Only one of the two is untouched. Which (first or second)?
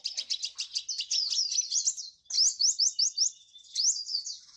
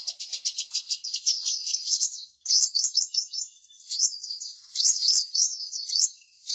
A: first